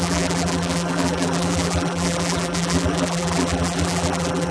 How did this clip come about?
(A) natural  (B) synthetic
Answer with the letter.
B